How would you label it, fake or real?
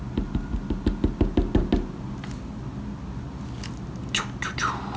real